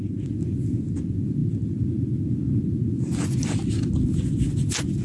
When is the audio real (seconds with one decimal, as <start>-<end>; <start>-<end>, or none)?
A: 0.0-5.0